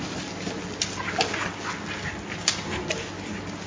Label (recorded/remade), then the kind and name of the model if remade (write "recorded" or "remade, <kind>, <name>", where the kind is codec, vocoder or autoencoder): recorded